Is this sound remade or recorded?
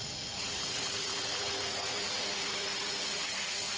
remade